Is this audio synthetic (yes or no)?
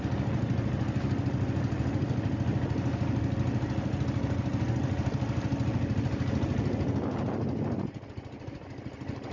no